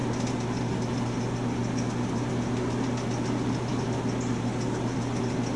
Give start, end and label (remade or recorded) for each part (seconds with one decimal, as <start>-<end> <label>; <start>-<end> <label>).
0.0-5.6 recorded